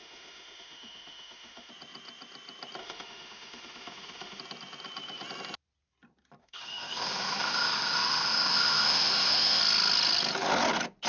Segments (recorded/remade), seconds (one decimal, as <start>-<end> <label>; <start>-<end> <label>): 0.0-1.7 remade; 1.7-2.8 recorded; 2.8-4.4 remade; 4.4-6.4 recorded; 6.4-9.6 remade; 9.6-11.1 recorded